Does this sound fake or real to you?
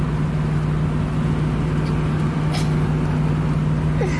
real